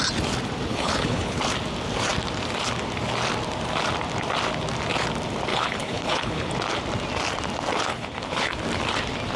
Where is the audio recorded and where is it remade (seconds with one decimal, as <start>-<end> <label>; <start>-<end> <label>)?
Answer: 0.0-0.7 recorded; 0.7-1.4 remade; 1.4-5.5 recorded; 5.5-6.5 remade; 6.5-7.9 recorded; 7.9-8.5 remade; 8.5-9.4 recorded